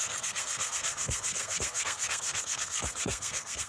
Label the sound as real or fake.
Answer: fake